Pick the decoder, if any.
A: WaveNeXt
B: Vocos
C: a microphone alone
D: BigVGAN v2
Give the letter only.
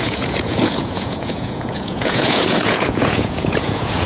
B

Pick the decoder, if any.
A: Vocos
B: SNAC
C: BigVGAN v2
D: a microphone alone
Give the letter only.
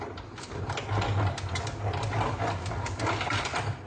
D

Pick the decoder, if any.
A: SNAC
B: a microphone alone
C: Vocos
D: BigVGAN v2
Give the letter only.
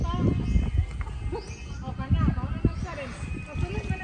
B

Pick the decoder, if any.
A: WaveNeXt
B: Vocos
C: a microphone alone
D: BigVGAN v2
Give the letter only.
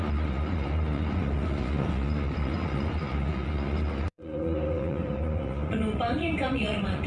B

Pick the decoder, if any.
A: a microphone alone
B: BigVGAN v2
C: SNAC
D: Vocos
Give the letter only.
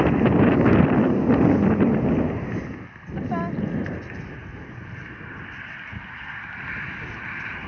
A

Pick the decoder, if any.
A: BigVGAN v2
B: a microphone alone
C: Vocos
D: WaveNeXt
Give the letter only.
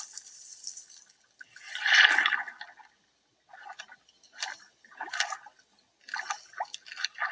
B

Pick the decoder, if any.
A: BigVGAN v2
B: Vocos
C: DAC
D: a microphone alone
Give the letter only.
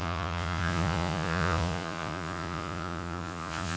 B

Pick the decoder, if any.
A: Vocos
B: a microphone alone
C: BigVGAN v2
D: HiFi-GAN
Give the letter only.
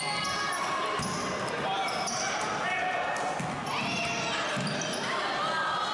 B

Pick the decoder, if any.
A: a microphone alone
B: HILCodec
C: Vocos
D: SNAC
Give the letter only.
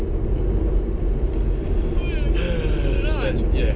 A